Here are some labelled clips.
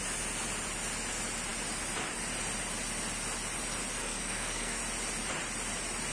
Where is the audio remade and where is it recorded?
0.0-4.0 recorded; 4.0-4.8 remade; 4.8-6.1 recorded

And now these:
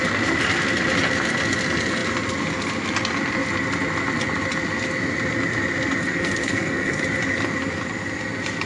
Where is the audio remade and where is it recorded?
0.0-6.0 recorded; 6.0-7.0 remade; 7.0-8.7 recorded

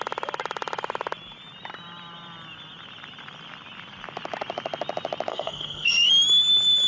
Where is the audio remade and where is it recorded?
0.0-5.3 recorded; 5.3-6.1 remade; 6.1-6.9 recorded

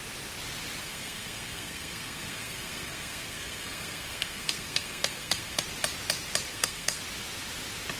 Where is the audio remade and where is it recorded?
0.0-0.8 recorded; 0.8-5.6 remade; 5.6-6.5 recorded; 6.5-7.0 remade; 7.0-8.0 recorded

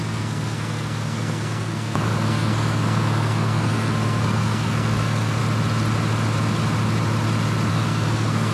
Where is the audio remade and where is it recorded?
0.0-5.4 remade; 5.4-7.7 recorded; 7.7-8.5 remade

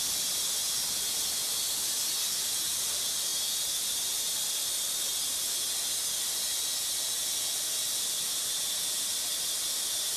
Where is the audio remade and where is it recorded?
0.0-10.2 recorded

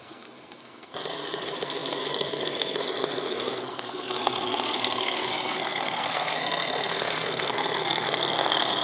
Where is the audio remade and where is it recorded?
0.0-8.8 remade

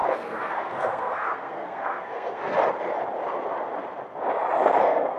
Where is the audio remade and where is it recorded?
0.0-2.4 remade; 2.4-4.8 recorded; 4.8-5.2 remade